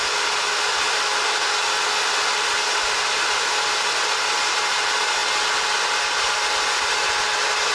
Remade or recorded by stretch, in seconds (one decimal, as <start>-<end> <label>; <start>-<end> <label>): 0.0-7.7 recorded